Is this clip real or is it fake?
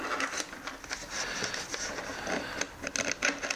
real